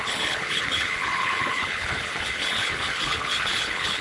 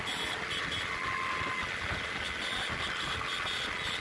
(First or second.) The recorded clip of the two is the second